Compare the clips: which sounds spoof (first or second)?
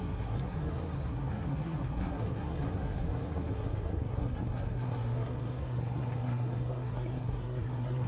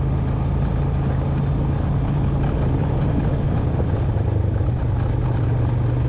first